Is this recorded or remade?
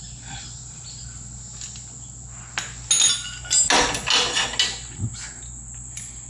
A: recorded